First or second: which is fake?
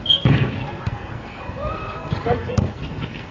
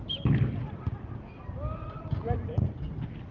first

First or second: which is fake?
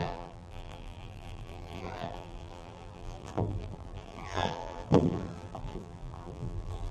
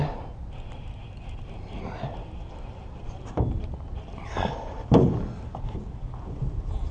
first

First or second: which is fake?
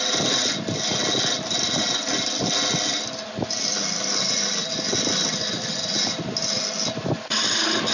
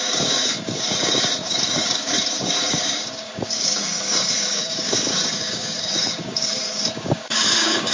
second